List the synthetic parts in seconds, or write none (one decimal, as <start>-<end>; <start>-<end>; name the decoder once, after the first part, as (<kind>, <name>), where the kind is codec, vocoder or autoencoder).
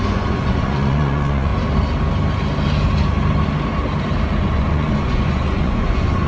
0.0-1.5 (vocoder, Vocos); 4.4-6.3